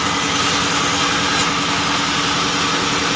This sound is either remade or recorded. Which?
recorded